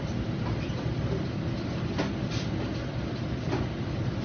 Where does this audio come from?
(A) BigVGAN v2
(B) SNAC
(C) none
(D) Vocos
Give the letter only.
A